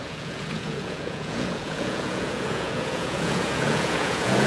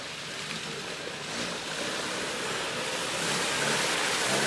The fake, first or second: first